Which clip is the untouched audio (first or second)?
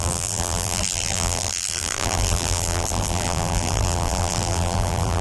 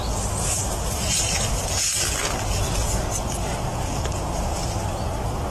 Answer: second